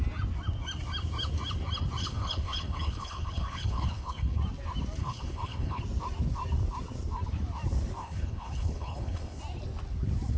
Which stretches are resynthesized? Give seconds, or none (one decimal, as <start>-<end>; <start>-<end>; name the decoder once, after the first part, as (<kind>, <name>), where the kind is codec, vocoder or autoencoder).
2.0-4.4 (codec, HILCodec); 5.0-5.8; 8.0-9.4

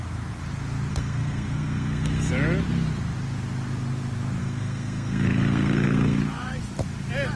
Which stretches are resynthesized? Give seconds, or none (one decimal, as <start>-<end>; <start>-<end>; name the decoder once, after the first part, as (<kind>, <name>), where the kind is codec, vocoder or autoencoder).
0.9-2.3 (codec, SNAC); 4.4-6.2

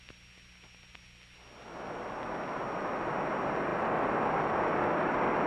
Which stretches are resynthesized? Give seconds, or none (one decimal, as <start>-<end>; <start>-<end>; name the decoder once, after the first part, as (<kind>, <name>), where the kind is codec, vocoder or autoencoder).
none